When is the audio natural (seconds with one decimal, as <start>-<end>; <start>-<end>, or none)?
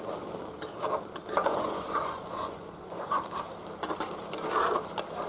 0.0-1.4; 3.2-5.3